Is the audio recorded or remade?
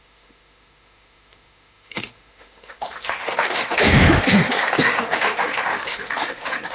remade